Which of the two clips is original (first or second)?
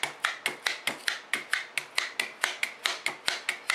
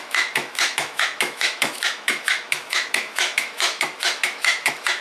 first